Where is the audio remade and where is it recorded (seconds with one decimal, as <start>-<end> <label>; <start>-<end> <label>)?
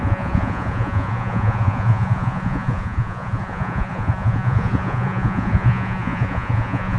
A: 0.0-7.0 remade